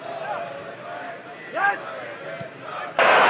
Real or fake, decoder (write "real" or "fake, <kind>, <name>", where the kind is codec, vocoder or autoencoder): real